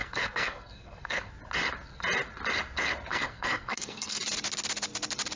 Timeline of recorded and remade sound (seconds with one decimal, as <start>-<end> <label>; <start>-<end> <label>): 0.0-1.3 remade; 1.3-3.1 recorded; 3.1-4.2 remade; 4.2-5.4 recorded